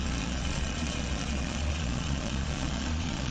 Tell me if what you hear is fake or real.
fake